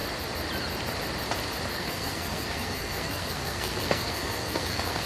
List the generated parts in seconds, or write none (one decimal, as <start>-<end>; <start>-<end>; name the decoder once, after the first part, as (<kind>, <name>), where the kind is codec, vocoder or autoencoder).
1.7-5.1 (codec, SNAC)